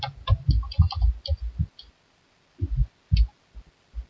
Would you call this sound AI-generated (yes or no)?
no